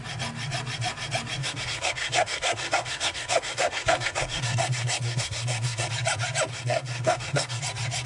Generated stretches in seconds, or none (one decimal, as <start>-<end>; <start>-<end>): 1.4-5.9; 6.5-7.6